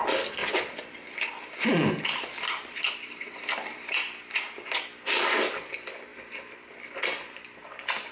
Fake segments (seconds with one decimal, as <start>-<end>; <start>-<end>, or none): 0.4-5.2